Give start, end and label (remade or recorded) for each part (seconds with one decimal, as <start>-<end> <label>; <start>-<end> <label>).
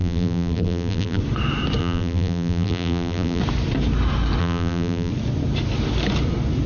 0.0-1.2 remade; 1.2-1.8 recorded; 1.8-3.4 remade; 3.4-4.4 recorded; 4.4-5.1 remade; 5.1-6.7 recorded